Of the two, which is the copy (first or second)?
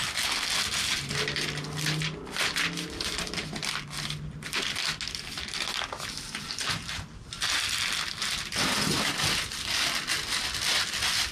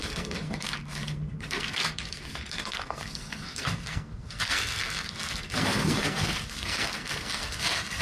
second